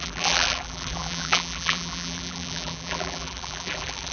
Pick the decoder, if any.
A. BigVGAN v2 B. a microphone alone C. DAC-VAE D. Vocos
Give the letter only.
A